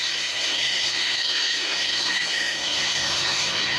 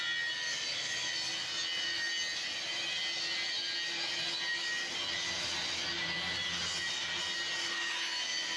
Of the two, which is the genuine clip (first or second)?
second